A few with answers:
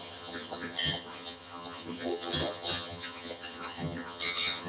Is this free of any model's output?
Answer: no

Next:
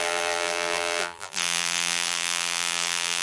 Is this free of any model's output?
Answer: no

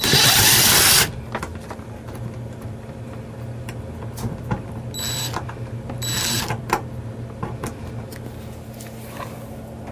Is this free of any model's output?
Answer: yes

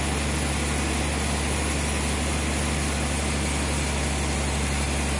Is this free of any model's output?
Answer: yes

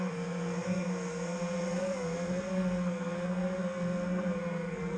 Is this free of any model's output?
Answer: no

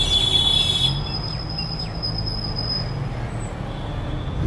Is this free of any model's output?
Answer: yes